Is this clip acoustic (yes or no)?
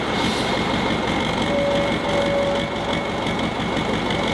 yes